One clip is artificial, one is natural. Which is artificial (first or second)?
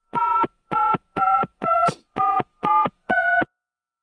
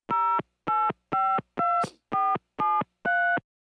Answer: first